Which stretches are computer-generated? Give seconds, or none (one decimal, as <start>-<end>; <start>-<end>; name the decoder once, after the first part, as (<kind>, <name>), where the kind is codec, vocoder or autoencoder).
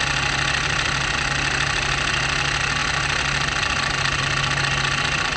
none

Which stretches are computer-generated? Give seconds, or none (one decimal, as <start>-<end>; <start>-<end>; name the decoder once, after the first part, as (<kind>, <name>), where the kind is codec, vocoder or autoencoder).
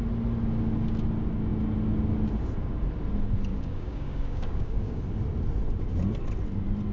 3.5-5.0 (codec, DAC)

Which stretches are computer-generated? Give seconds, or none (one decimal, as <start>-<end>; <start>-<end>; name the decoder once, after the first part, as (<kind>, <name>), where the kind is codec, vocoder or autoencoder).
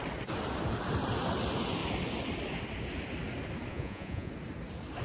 3.7-4.3 (vocoder, Vocos)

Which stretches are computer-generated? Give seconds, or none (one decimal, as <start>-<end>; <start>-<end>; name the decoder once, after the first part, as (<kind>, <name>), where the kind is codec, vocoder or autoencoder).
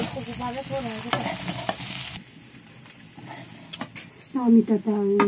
none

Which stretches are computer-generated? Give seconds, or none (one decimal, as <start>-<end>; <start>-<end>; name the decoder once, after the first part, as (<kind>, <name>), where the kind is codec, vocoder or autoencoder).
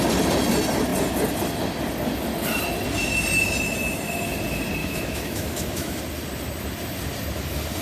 4.8-6.0 (autoencoder, DAC-VAE)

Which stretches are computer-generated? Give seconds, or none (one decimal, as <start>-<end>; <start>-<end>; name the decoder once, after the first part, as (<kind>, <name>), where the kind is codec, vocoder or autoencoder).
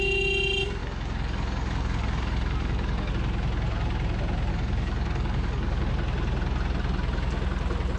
0.8-3.1 (codec, DAC); 4.5-5.9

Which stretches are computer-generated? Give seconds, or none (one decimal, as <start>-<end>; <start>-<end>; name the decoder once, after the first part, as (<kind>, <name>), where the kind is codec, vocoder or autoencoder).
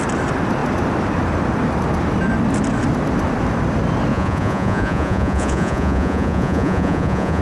4.1-7.4 (vocoder, Vocos)